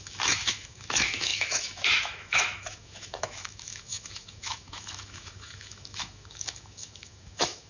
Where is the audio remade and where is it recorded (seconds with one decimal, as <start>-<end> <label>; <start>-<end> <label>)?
0.0-7.7 remade